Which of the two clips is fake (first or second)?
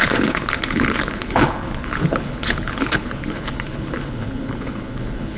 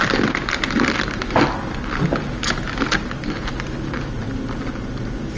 first